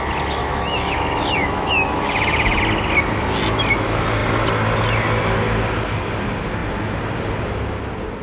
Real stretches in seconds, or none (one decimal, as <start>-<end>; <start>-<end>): 0.0-0.4; 2.6-8.2